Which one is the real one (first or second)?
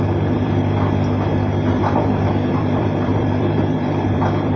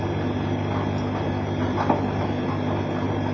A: second